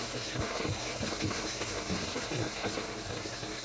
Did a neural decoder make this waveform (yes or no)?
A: yes